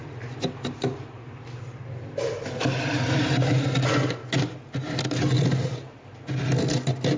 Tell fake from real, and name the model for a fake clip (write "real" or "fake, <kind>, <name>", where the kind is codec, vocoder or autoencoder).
real